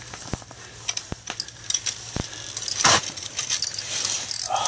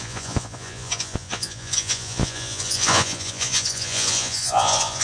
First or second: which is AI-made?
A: second